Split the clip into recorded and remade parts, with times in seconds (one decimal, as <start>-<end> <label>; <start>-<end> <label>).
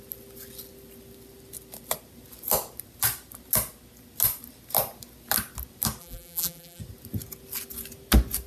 0.0-6.0 recorded; 6.0-6.8 remade; 6.8-8.5 recorded